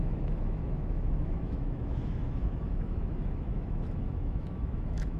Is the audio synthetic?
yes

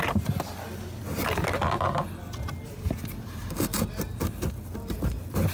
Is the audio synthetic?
no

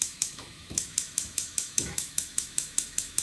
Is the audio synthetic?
yes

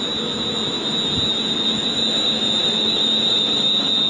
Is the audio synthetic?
no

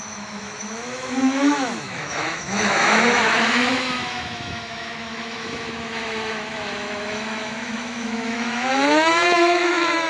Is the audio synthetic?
yes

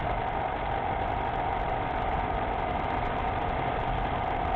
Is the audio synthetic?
no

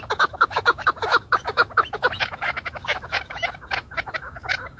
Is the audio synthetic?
yes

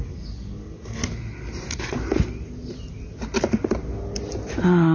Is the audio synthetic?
no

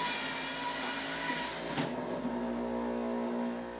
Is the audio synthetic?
no